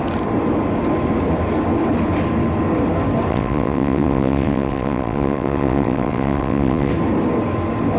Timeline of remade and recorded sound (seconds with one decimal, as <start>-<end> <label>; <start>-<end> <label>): 0.0-3.3 recorded; 3.3-6.9 remade; 6.9-8.0 recorded